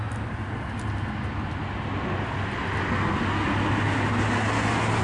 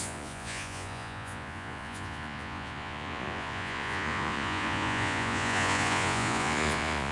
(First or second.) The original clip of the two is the first